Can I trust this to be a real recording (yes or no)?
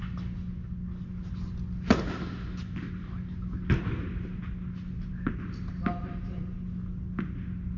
yes